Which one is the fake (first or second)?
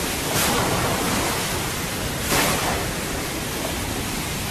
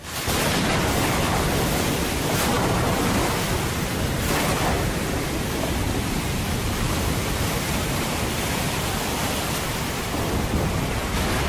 second